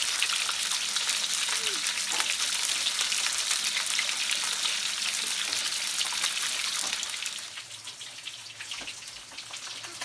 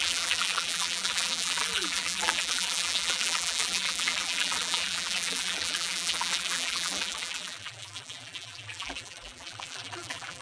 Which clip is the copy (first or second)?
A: second